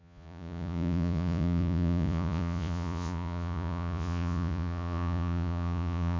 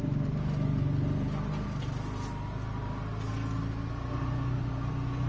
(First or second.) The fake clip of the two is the first